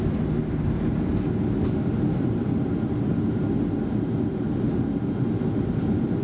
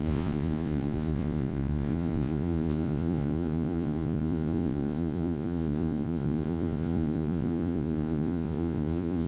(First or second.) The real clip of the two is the first